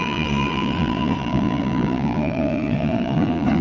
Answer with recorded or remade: remade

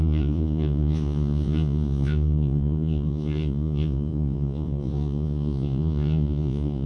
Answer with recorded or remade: remade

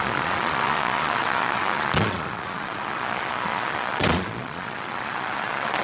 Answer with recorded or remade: remade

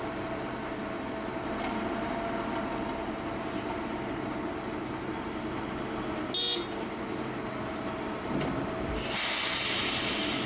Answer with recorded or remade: recorded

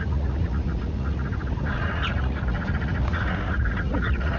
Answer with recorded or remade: remade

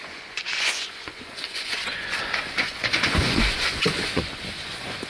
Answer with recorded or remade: remade